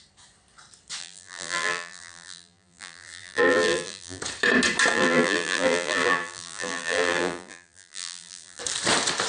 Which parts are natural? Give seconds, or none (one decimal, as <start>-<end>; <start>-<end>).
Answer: 0.0-1.0; 4.2-4.9; 8.6-9.3